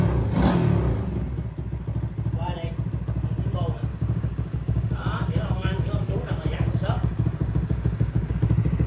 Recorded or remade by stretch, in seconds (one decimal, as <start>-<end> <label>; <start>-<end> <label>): 0.0-3.9 recorded; 3.9-8.3 remade; 8.3-8.9 recorded